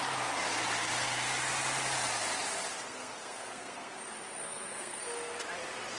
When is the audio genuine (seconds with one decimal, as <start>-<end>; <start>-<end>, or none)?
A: 0.0-2.8; 3.9-4.4; 5.0-6.0